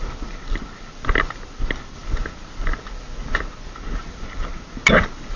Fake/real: real